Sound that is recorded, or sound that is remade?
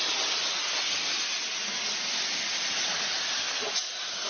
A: recorded